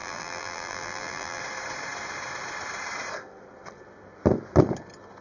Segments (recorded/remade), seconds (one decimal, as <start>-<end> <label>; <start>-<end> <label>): 0.0-1.4 remade; 1.4-5.2 recorded